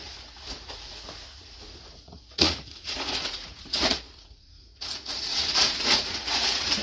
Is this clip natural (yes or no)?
no